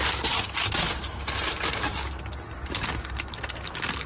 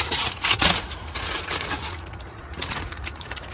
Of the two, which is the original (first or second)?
first